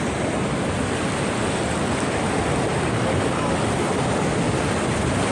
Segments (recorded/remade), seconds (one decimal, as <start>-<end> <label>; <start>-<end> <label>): 0.0-5.3 remade